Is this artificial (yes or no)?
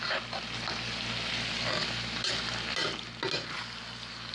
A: no